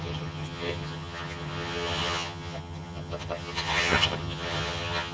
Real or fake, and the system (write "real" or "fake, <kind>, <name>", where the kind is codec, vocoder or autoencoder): fake, vocoder, HiFi-GAN